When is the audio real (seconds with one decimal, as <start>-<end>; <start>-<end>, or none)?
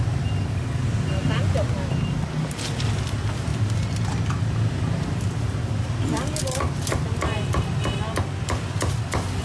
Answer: 0.0-9.4